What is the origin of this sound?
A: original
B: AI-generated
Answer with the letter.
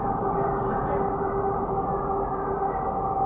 A